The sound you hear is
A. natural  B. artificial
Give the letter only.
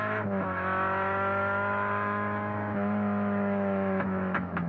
B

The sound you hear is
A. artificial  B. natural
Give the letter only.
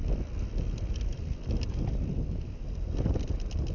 B